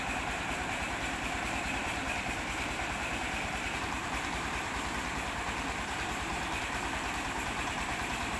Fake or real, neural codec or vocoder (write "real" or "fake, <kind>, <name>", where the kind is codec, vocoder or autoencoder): fake, vocoder, BigVGAN v2